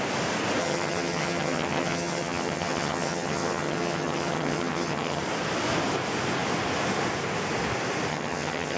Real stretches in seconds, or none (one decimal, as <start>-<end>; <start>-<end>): 0.0-0.6; 5.2-8.1

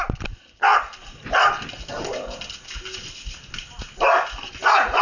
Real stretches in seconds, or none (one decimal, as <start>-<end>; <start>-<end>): 0.0-5.0

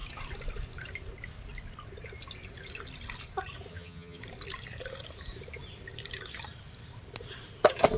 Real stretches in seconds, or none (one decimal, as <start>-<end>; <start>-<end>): 0.0-3.7; 4.2-8.0